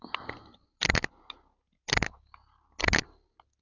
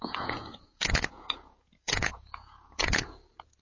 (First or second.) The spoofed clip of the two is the second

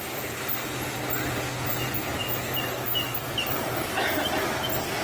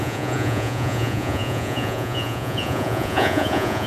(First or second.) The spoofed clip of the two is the second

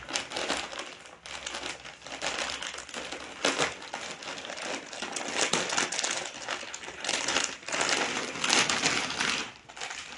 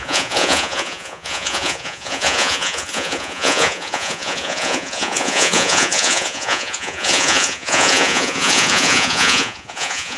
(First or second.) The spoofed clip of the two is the second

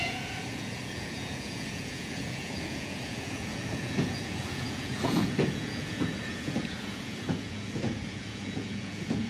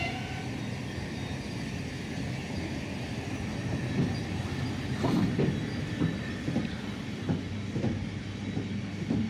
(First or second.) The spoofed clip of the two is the first